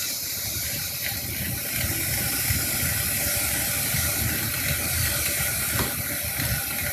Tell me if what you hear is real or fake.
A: real